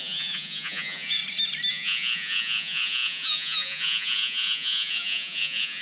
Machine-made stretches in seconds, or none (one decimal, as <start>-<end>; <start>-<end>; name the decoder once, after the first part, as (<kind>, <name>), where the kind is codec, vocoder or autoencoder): 0.0-1.2 (vocoder, Vocos); 1.7-5.8